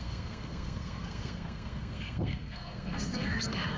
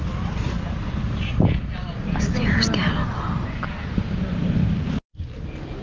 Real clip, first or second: second